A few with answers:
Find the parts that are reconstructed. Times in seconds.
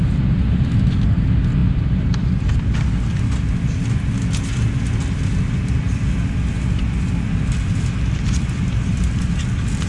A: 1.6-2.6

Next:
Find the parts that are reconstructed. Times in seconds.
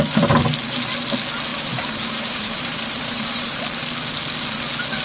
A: 1.5-3.6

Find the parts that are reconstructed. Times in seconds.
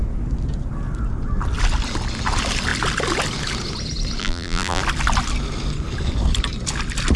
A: 4.2-4.8